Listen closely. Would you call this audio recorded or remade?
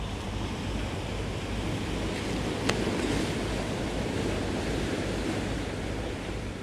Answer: recorded